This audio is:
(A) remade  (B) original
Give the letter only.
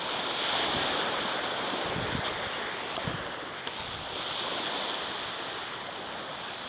B